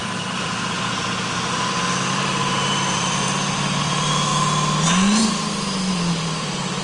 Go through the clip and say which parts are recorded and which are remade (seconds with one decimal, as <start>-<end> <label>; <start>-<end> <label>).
0.0-4.3 remade; 4.3-5.9 recorded; 5.9-6.8 remade